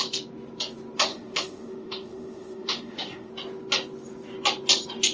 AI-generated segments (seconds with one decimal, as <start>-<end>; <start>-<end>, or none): 1.1-3.3